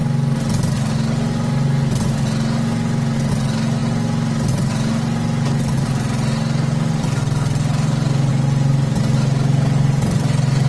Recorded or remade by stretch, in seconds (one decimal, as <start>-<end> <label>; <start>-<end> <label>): 0.0-10.7 recorded